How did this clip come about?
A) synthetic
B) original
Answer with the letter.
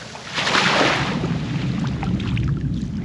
B